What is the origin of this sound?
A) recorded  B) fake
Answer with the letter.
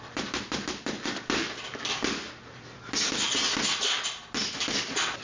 A